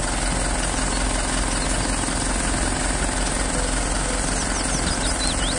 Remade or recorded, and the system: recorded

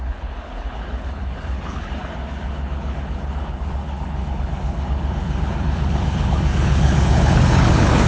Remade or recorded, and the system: remade, codec, HILCodec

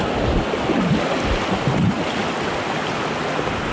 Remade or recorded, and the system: recorded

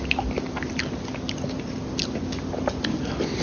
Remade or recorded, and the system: recorded